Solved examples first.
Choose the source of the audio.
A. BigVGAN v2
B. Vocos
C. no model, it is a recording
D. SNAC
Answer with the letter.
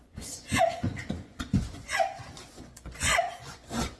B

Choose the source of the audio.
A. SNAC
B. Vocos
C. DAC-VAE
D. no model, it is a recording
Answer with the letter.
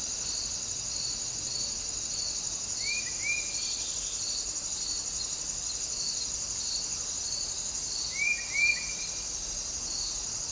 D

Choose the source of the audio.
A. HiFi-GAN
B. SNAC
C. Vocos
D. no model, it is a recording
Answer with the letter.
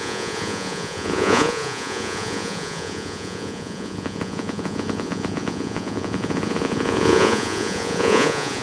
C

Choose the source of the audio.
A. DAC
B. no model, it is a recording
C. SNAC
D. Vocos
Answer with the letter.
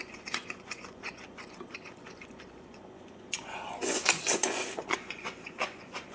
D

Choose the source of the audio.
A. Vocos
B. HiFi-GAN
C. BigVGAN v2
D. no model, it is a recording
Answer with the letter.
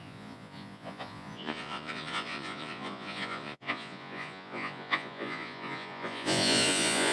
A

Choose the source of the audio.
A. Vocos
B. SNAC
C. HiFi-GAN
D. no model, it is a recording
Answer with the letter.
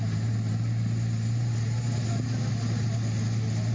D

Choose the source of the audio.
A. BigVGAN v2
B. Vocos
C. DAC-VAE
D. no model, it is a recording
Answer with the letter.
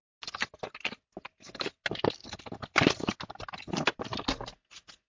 D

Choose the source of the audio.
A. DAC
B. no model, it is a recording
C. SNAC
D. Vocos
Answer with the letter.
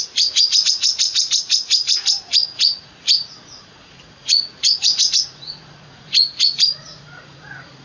D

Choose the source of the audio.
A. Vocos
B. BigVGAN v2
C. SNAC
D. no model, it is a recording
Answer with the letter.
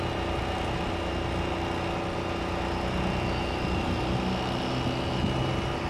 D